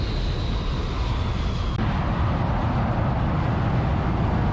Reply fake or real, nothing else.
real